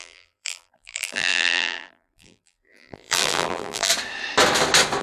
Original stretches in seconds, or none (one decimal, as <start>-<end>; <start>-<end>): 3.9-5.0